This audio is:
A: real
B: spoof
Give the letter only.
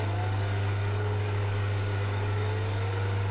B